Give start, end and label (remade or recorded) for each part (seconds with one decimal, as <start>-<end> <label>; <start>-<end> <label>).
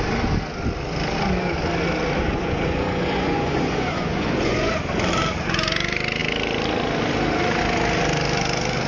0.0-2.2 recorded; 2.2-4.7 remade; 4.7-8.9 recorded